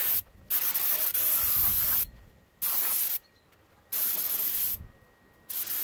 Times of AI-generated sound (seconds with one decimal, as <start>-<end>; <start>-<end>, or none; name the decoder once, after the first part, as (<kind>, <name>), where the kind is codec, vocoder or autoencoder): none